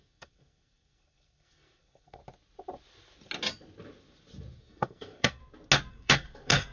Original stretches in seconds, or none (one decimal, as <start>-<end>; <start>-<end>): 2.2-4.6; 5.4-5.9